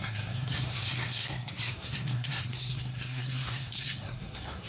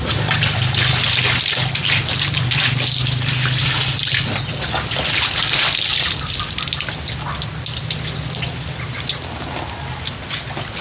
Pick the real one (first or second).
second